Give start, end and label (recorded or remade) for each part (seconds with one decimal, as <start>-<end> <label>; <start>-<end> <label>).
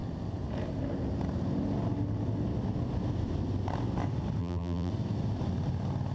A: 0.0-4.4 recorded; 4.4-4.9 remade; 4.9-6.1 recorded